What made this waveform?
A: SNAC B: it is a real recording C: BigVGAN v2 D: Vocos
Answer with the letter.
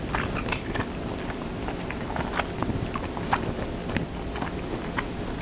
B